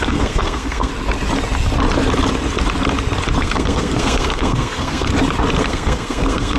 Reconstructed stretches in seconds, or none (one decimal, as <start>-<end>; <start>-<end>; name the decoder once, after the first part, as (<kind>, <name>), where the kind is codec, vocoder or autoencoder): 0.0-0.9 (codec, SNAC); 3.4-5.1; 5.6-6.6

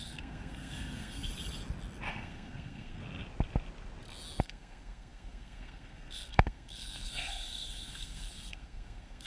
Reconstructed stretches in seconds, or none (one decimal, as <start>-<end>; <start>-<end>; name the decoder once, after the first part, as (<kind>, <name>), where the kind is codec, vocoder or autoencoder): 0.0-1.3 (codec, SNAC); 2.1-3.0; 4.4-9.3

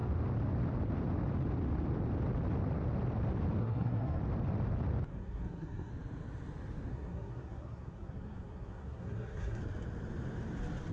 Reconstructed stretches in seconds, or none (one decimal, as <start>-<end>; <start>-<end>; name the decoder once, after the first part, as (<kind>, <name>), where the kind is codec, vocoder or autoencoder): 3.6-4.2 (codec, SNAC); 5.1-5.9; 6.9-9.6

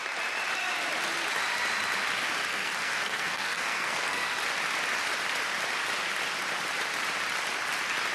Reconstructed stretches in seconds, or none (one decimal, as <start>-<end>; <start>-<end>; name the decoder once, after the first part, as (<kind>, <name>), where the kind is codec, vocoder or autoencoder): 2.5-4.3 (codec, SNAC)